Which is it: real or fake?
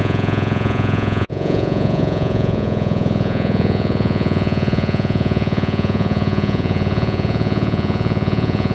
fake